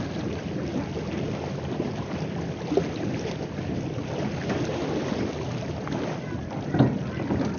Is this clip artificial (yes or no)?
no